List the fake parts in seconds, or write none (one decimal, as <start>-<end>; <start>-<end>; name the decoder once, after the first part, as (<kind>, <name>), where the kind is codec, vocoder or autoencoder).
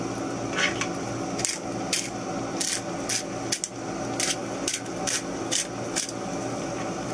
none